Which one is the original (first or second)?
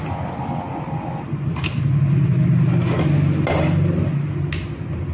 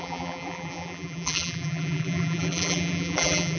first